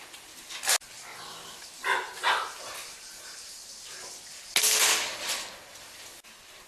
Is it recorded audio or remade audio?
recorded